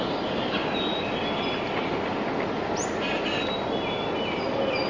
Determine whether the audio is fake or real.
real